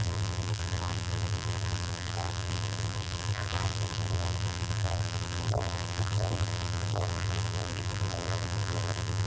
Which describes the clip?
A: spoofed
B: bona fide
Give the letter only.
A